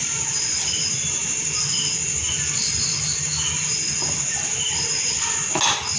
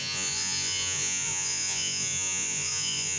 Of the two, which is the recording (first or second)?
first